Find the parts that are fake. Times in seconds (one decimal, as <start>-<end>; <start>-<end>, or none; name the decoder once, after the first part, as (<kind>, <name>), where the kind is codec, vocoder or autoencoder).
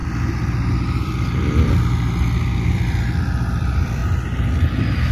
0.0-4.0 (vocoder, BigVGAN v2)